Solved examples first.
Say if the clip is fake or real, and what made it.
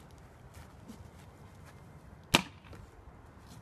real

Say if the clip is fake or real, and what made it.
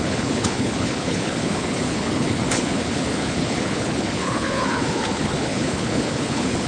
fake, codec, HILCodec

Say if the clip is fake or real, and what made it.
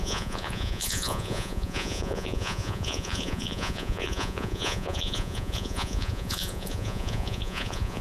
fake, vocoder, Vocos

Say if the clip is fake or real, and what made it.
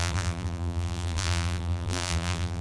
fake, vocoder, BigVGAN v2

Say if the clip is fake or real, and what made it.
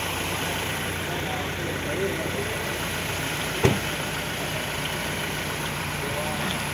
real